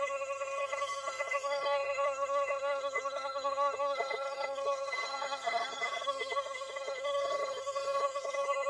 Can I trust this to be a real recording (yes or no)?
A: no